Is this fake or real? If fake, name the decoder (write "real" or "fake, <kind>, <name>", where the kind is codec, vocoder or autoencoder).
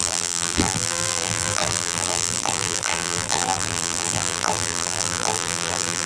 fake, vocoder, BigVGAN v2